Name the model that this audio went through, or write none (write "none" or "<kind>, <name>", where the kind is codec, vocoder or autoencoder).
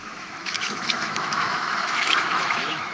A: autoencoder, DAC-VAE